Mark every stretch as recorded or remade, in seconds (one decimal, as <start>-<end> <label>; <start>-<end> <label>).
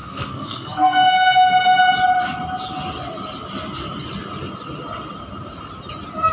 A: 0.0-1.8 remade; 1.8-6.3 recorded